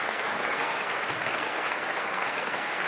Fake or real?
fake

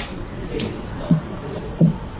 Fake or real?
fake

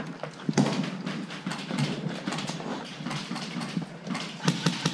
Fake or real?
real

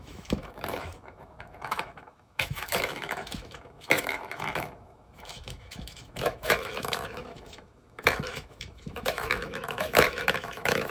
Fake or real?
fake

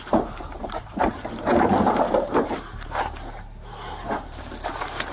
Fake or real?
fake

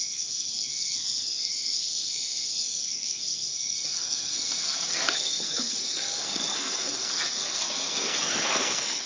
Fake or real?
fake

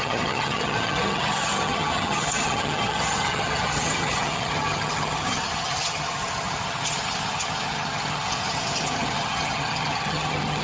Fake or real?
fake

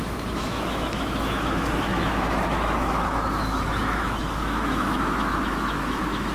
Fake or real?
fake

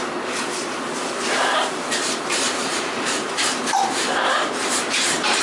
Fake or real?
fake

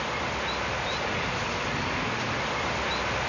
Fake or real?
real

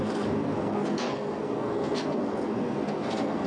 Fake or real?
fake